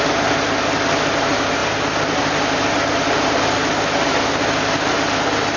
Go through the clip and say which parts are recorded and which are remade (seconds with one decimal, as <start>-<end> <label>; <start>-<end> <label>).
0.0-5.6 recorded

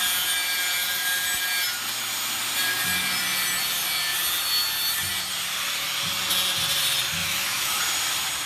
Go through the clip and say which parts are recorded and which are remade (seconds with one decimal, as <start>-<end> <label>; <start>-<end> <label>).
0.0-7.2 recorded; 7.2-7.8 remade; 7.8-8.5 recorded